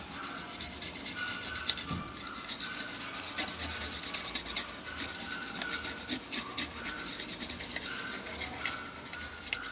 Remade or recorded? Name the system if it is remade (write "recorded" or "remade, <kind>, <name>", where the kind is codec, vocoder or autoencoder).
recorded